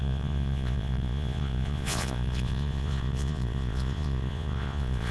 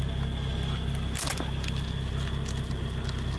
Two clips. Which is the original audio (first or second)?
second